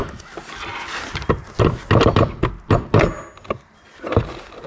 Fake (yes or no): no